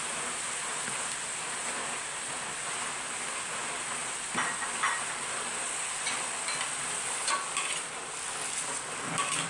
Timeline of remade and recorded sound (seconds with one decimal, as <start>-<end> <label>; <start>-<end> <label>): 0.0-9.5 recorded